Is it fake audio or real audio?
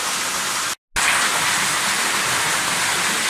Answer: real